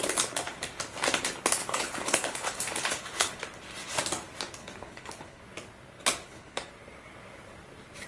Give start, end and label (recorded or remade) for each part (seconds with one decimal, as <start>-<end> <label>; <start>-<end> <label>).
0.0-1.6 recorded; 1.6-3.4 remade; 3.4-4.6 recorded; 4.6-5.4 remade; 5.4-6.2 recorded; 6.2-6.7 remade; 6.7-8.1 recorded